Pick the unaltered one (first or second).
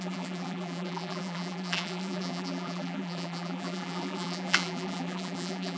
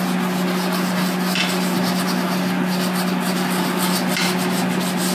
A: second